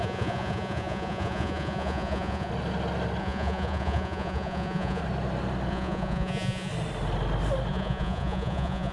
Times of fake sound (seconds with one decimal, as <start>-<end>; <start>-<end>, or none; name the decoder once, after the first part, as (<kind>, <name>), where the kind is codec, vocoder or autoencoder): 0.0-2.5 (vocoder, Vocos); 3.2-5.0; 5.7-6.7; 7.7-8.9

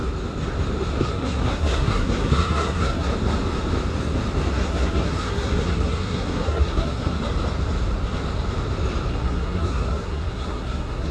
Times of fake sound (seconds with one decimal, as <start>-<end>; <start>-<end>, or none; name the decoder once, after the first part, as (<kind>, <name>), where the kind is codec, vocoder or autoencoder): 1.0-3.1 (codec, SNAC); 4.5-7.2; 9.1-11.1